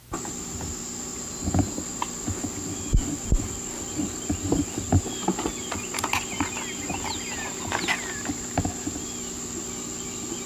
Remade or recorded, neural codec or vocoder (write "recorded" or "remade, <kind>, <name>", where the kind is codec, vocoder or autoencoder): recorded